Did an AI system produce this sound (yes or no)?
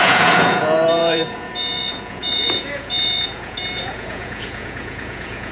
yes